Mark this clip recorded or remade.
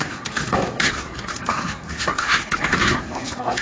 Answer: remade